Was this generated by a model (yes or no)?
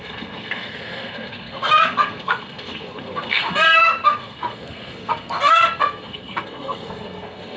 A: yes